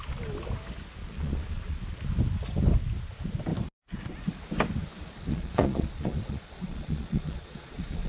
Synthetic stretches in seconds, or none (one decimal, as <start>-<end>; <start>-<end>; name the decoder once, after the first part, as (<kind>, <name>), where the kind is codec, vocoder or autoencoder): 1.0-1.8 (vocoder, Vocos); 5.3-8.1